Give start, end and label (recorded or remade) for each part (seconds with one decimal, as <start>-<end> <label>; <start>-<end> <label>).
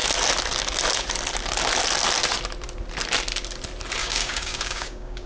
0.0-4.0 recorded; 4.0-5.3 remade